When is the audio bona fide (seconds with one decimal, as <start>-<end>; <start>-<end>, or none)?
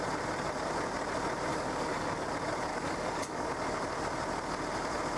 0.0-1.5; 2.3-2.7; 3.5-5.2